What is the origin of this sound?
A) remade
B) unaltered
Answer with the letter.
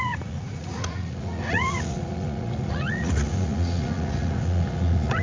A